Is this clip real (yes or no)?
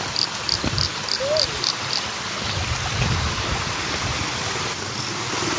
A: yes